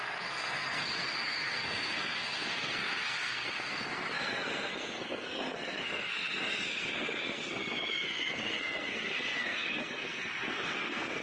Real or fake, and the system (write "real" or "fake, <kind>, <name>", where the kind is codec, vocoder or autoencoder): fake, codec, SNAC